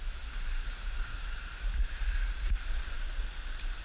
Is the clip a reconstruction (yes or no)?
no